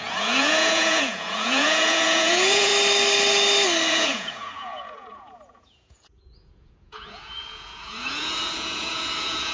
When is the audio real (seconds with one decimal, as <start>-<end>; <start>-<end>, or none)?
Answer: 2.7-3.9